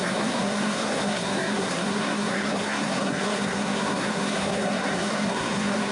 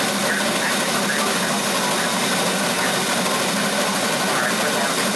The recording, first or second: second